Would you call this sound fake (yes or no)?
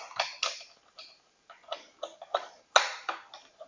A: no